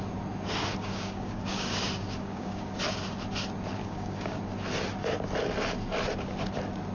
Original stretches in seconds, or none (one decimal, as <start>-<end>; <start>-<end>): 0.0-0.7; 2.8-3.8; 4.4-6.9